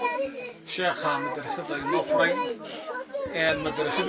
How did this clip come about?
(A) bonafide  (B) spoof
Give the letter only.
A